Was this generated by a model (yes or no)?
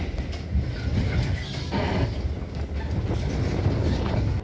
no